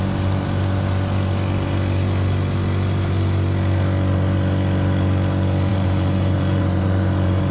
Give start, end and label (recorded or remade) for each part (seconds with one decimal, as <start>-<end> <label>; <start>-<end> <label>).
0.0-5.7 recorded; 5.7-7.5 remade